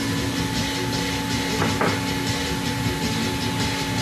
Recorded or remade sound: recorded